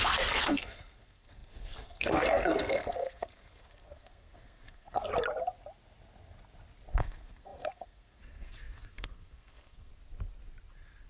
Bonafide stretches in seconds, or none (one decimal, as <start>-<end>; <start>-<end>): 5.1-6.9; 9.9-11.1